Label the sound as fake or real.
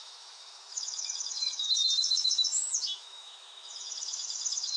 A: fake